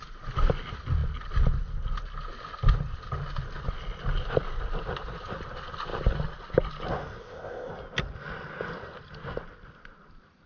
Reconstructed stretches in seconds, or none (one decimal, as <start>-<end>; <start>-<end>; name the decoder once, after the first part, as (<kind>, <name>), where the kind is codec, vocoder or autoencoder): 7.2-7.7 (codec, ZipCodec)